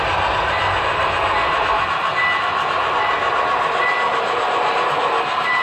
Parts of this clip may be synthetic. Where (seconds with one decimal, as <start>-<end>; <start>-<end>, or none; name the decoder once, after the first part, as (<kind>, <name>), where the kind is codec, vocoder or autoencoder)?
none